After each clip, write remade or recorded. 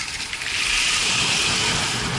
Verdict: recorded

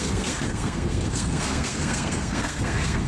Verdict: remade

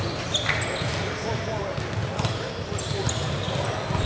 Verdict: recorded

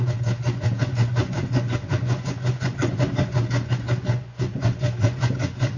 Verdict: remade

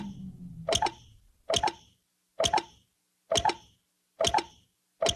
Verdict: recorded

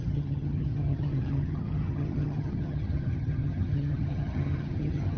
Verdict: remade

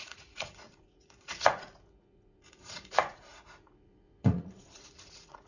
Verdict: remade